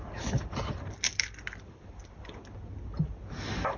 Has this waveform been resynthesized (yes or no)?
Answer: no